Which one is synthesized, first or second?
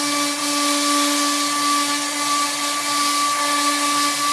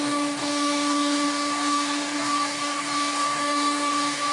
second